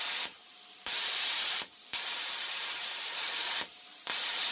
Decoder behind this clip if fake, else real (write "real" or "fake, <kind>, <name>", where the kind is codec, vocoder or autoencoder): fake, vocoder, BigVGAN v2